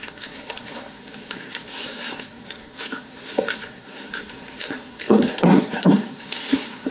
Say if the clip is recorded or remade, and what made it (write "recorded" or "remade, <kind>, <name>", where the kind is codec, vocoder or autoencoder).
remade, codec, SNAC